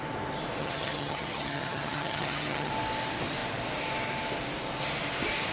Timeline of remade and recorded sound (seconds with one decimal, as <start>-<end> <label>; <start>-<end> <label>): 0.0-0.6 recorded; 0.6-2.7 remade; 2.7-5.5 recorded